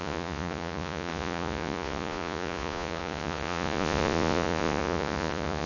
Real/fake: fake